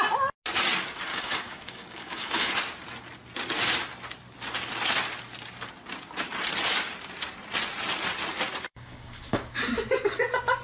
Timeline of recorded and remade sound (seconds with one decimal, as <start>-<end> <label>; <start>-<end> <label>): 0.0-1.1 recorded; 1.1-2.5 remade; 2.5-8.7 recorded; 8.7-9.6 remade; 9.6-10.6 recorded